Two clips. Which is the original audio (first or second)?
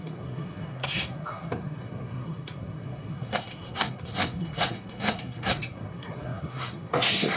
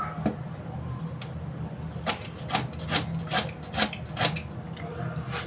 second